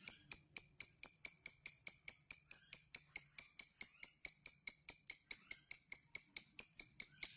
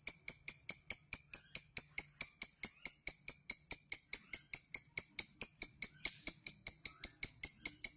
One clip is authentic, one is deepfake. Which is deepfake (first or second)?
first